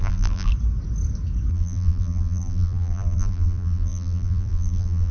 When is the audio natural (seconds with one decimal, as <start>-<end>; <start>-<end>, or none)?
0.5-1.5